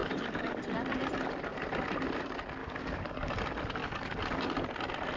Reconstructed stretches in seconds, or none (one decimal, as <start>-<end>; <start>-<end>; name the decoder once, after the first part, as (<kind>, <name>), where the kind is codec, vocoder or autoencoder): 0.0-0.6 (codec, DAC); 2.6-3.3; 3.8-4.5